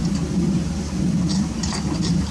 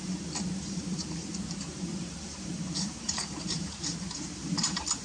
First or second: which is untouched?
first